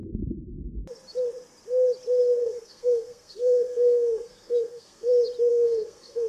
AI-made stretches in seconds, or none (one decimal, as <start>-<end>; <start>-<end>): 0.0-0.7; 2.4-5.1; 5.5-6.3